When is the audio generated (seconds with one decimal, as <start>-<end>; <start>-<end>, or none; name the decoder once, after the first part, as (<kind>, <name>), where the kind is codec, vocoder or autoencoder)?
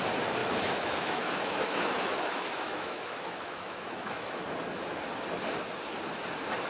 0.4-4.4 (autoencoder, DAC-VAE)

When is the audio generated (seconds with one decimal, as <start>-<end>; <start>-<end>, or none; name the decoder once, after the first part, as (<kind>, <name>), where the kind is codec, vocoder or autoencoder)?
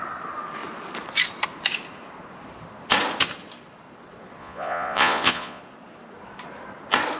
4.4-5.6 (vocoder, Vocos)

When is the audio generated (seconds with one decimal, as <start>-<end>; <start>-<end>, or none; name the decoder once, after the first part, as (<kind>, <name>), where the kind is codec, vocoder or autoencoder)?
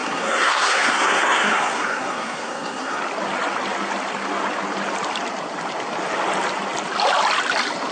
0.0-3.0 (codec, SNAC)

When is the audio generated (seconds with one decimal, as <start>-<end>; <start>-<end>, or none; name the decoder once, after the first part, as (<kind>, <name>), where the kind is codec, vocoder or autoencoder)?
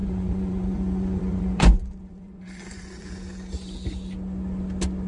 0.0-3.1 (vocoder, Vocos)